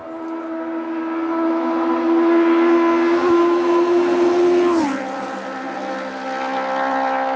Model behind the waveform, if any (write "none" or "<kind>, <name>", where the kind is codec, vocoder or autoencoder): none